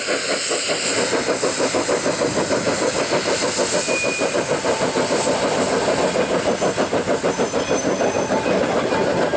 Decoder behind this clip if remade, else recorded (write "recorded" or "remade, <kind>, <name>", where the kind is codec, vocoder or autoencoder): recorded